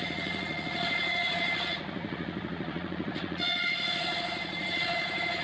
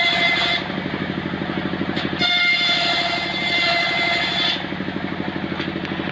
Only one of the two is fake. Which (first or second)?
first